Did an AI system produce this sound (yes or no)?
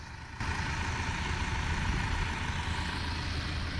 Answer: no